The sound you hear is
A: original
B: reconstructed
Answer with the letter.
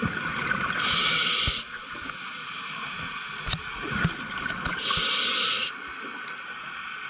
A